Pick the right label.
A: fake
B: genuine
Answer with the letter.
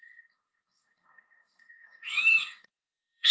A